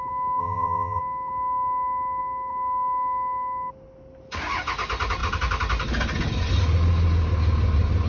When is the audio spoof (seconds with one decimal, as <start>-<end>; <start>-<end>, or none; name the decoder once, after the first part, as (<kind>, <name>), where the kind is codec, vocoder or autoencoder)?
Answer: 0.4-1.0 (vocoder, HiFi-GAN)